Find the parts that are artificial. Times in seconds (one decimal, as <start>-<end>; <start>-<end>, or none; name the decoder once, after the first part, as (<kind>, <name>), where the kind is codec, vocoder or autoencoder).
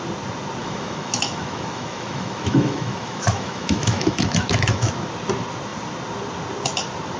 0.6-4.9 (autoencoder, DAC-VAE)